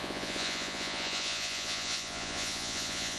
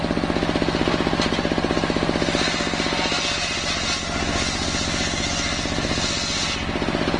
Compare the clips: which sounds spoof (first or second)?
first